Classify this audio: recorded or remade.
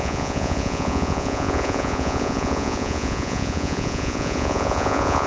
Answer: remade